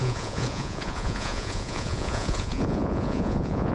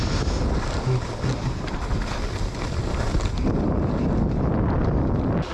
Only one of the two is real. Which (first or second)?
second